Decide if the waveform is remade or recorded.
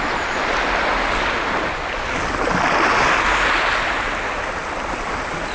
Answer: recorded